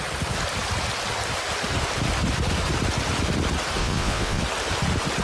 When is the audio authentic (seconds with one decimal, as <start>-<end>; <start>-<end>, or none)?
0.0-3.8; 4.4-5.2